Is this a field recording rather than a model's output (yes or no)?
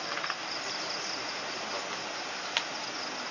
yes